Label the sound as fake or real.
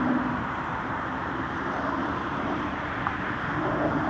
fake